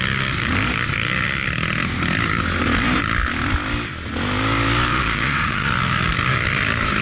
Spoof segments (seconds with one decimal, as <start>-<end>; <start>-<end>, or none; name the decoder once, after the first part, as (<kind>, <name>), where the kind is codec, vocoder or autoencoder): 4.9-5.7 (vocoder, Vocos)